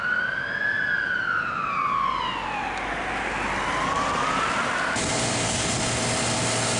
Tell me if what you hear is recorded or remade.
recorded